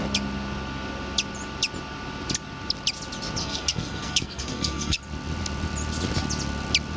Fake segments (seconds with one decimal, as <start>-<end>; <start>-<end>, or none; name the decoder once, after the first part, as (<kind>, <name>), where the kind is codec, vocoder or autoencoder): 3.4-5.0 (codec, SNAC)